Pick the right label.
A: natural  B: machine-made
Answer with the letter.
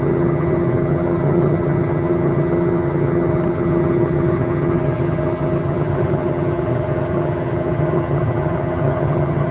B